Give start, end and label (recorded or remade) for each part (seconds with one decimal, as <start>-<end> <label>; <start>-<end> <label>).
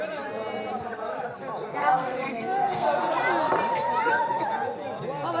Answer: 0.0-1.8 recorded; 1.8-3.0 remade; 3.0-5.4 recorded